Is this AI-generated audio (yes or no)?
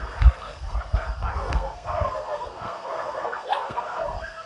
yes